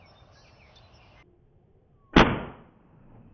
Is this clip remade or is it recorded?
recorded